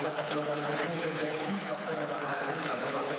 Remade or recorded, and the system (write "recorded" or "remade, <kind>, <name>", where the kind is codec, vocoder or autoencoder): remade, codec, HILCodec